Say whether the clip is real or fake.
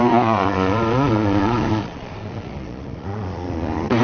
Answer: fake